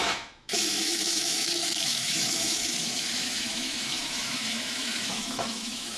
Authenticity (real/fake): fake